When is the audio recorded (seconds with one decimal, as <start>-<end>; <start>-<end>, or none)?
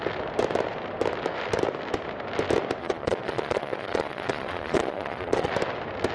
0.0-2.8; 5.5-6.1